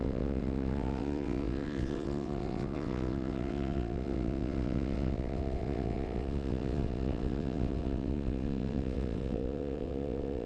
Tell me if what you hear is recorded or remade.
remade